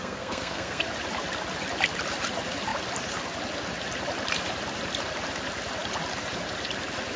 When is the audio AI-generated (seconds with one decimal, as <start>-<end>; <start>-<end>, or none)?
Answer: 0.0-0.8